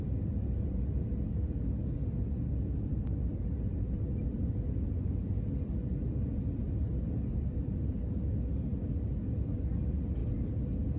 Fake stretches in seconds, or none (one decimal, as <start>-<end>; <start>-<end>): none